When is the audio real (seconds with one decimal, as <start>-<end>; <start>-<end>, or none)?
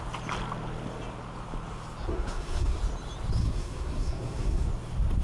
0.0-2.1; 2.8-3.4; 4.7-5.2